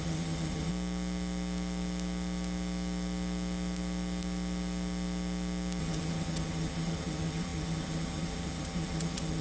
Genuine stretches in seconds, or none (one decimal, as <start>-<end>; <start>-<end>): 0.7-5.8